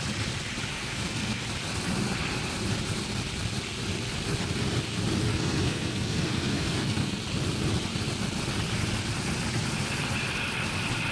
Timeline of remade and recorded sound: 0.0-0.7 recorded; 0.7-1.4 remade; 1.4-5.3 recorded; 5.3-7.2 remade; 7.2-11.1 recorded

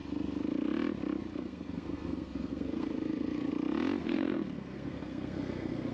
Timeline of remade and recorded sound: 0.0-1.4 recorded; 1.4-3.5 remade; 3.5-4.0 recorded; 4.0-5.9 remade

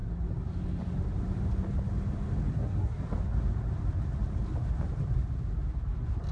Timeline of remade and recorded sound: 0.0-2.5 recorded; 2.5-3.0 remade; 3.0-6.3 recorded